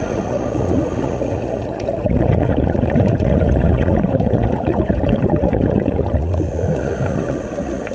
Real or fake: fake